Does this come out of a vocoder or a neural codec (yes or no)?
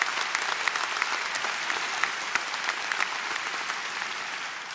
no